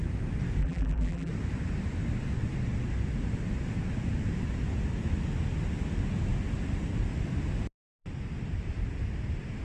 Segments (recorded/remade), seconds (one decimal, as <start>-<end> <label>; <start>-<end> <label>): 0.0-0.6 recorded; 0.6-1.3 remade; 1.3-9.6 recorded